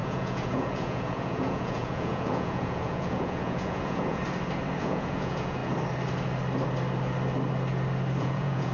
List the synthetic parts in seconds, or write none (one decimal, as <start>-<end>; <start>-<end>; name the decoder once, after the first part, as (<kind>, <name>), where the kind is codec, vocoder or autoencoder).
0.0-4.2 (vocoder, Vocos); 4.8-5.6; 8.2-8.7

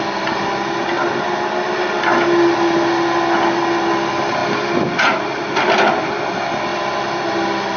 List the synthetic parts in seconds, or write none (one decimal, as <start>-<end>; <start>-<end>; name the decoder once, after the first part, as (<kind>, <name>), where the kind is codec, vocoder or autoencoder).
none